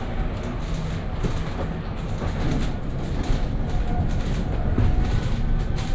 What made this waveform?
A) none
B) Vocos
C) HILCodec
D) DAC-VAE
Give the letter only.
A